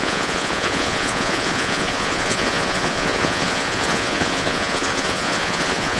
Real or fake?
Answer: fake